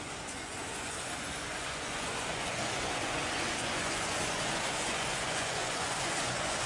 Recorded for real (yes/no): no